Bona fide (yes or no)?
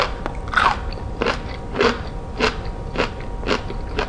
yes